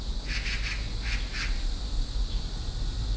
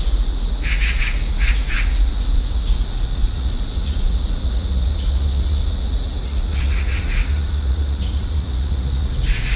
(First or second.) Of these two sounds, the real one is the first